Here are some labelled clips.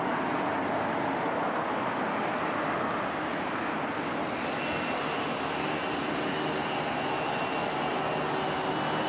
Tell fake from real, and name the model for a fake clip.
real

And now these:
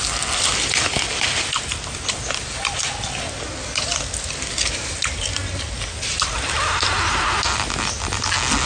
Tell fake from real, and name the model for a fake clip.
real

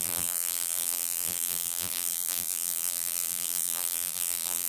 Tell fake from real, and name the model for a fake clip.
fake, vocoder, BigVGAN v2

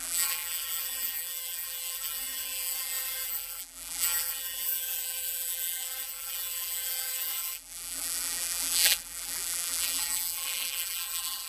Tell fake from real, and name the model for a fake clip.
fake, vocoder, BigVGAN v2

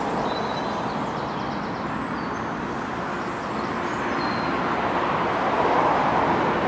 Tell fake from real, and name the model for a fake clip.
real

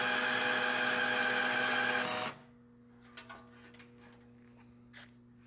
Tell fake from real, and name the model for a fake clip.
real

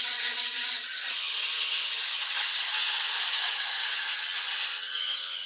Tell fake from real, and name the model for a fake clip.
fake, vocoder, HiFi-GAN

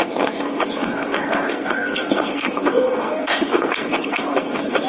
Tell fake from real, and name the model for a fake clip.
fake, codec, SNAC